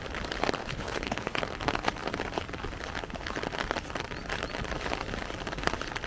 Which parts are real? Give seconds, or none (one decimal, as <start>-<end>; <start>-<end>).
0.0-0.6; 1.4-6.1